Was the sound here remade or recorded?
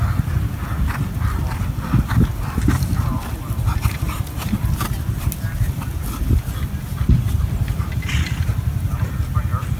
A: recorded